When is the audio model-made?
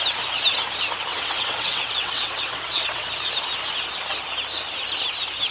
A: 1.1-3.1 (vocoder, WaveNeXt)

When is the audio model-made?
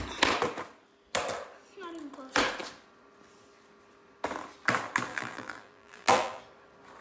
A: 5.1-6.4 (vocoder, BigVGAN v2)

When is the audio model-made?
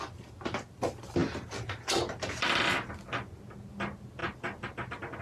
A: none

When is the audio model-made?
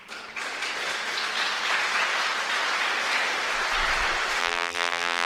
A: 4.4-5.3 (vocoder, BigVGAN v2)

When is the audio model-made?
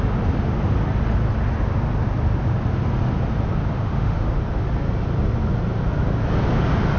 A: 3.7-4.4 (autoencoder, DAC-VAE)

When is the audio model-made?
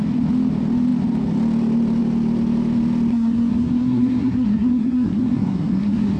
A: 3.1-6.2 (codec, SNAC)